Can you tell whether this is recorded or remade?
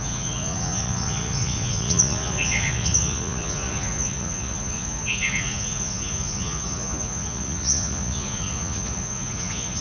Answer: remade